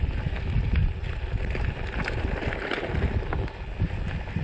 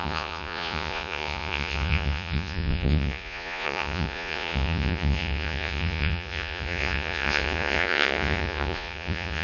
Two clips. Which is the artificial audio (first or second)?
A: second